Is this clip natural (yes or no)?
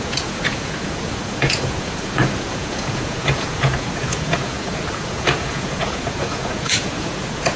no